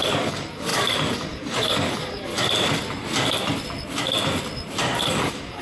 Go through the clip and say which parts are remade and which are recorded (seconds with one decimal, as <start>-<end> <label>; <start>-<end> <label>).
0.0-2.3 remade; 2.3-5.1 recorded; 5.1-5.6 remade